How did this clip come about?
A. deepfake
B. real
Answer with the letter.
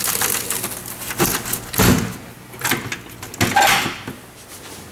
B